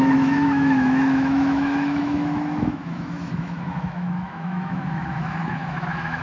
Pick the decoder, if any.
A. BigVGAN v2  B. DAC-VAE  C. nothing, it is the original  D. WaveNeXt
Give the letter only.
B